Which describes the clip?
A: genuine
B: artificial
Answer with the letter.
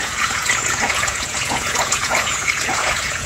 B